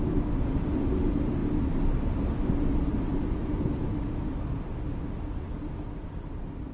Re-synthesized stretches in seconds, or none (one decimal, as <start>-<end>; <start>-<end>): none